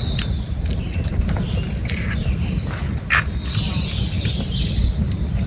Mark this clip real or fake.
real